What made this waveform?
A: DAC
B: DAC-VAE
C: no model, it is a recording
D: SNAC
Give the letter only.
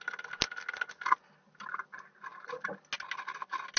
C